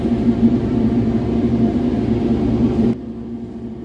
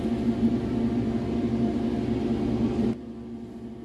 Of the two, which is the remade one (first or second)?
first